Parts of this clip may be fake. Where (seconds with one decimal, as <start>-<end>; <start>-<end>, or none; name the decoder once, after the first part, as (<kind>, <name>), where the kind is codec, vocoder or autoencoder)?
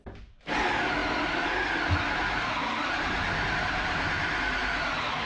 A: none